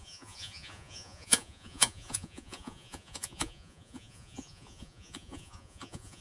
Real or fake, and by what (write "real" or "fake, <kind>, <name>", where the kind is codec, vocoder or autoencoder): fake, vocoder, Vocos